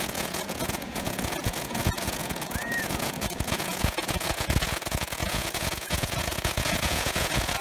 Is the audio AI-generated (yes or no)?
yes